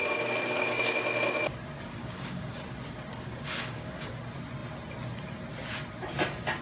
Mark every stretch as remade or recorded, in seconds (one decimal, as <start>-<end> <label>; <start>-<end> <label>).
0.0-0.8 remade; 0.8-2.0 recorded; 2.0-2.6 remade; 2.6-3.1 recorded; 3.1-4.1 remade; 4.1-6.6 recorded